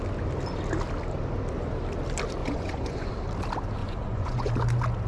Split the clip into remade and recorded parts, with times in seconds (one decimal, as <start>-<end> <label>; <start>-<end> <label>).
0.0-2.4 recorded; 2.4-3.1 remade; 3.1-3.8 recorded; 3.8-4.5 remade; 4.5-5.1 recorded